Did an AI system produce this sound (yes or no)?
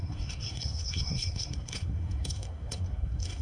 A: yes